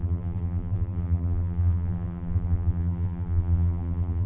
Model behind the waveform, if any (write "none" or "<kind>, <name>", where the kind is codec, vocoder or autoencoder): vocoder, BigVGAN v2